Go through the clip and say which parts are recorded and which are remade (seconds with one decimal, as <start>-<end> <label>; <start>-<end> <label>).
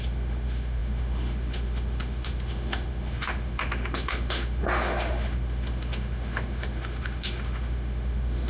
0.0-8.5 remade